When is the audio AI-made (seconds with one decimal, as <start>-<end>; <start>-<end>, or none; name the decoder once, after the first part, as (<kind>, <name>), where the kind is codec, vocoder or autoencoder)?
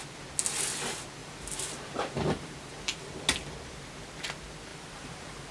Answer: 1.2-3.2 (vocoder, BigVGAN v2); 4.7-5.5